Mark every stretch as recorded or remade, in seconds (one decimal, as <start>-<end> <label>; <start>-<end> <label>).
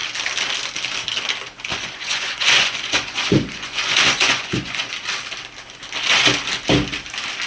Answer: 0.0-1.7 recorded; 1.7-4.9 remade; 4.9-7.5 recorded